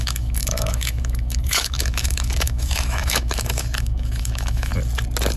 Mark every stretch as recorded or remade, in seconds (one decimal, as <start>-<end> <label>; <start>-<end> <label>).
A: 0.0-4.7 remade; 4.7-5.4 recorded